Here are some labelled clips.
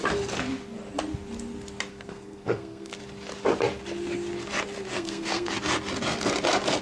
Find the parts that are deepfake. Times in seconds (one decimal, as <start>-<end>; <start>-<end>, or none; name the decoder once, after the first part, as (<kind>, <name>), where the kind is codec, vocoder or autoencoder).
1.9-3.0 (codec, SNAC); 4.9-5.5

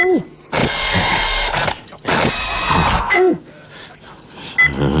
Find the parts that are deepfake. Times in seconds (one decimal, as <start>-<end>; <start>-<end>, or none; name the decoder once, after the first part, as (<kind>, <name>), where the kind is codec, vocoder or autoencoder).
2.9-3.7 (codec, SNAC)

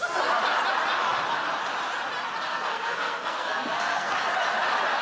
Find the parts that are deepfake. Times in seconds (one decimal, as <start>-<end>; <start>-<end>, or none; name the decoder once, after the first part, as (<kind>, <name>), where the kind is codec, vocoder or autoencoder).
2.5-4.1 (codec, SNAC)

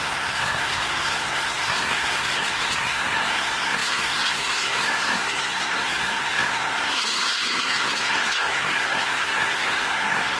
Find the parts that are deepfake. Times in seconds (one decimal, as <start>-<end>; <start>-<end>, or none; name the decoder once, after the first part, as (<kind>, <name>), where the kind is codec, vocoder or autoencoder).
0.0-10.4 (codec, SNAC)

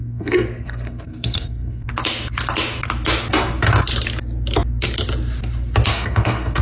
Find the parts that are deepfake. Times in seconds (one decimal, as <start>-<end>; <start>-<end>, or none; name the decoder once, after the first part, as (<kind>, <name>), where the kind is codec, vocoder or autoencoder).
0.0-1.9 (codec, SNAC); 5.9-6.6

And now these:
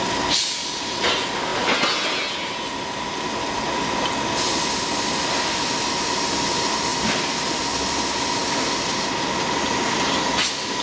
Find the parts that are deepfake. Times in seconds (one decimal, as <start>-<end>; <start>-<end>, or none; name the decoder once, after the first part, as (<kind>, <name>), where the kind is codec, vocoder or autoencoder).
none

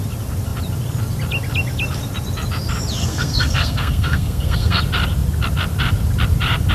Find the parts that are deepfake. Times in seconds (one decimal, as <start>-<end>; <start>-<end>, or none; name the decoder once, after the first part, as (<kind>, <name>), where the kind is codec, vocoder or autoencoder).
3.0-4.8 (codec, SNAC)